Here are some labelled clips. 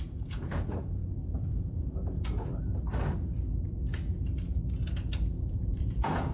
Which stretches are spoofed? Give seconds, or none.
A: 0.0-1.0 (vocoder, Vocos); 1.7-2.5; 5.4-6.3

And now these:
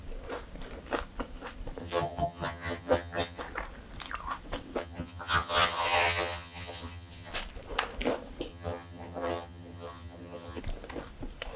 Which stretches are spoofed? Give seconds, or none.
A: 1.8-3.4 (vocoder, HiFi-GAN); 4.8-7.3; 8.5-10.6

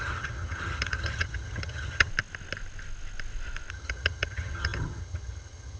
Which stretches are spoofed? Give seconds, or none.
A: 0.0-2.1 (vocoder, HiFi-GAN); 3.7-5.8

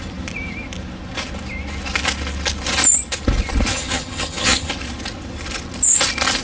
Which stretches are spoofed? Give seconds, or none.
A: 3.7-4.7 (vocoder, HiFi-GAN)

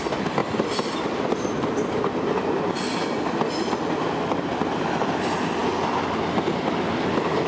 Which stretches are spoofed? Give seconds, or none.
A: none